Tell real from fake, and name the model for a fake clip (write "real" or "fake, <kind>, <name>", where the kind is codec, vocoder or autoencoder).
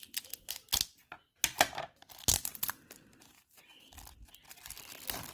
real